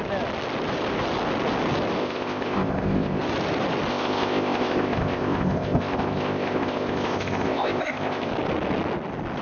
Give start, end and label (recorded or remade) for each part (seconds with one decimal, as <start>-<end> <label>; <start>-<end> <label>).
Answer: 0.0-2.0 recorded; 2.0-3.2 remade; 3.2-3.9 recorded; 3.9-8.3 remade; 8.3-9.4 recorded